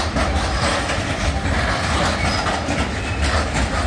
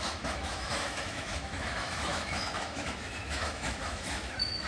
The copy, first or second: second